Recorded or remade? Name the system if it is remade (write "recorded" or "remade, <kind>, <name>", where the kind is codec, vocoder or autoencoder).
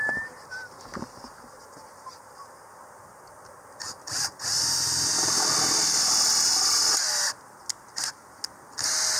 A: recorded